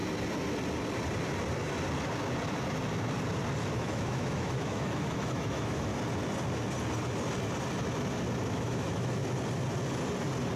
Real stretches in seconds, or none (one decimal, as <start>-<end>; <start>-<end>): 0.0-3.7; 5.9-8.5; 9.2-10.6